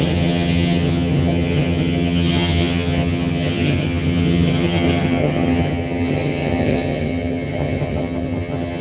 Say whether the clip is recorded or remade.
remade